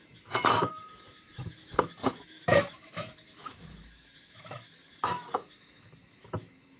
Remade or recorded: remade